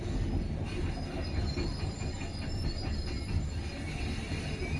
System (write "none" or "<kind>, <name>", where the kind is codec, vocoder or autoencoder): none